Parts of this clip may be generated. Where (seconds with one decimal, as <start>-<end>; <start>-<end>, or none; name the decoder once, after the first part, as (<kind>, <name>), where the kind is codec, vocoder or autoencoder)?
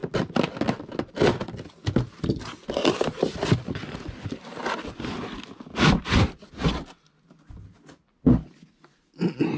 none